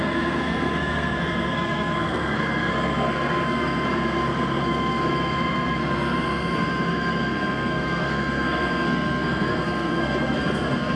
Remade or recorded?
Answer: remade